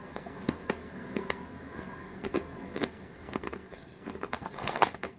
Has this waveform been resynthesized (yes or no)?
yes